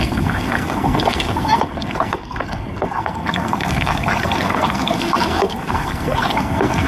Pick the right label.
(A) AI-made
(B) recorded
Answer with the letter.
A